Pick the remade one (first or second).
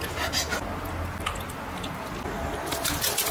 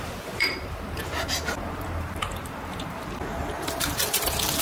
second